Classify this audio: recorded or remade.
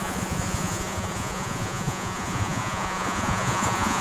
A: remade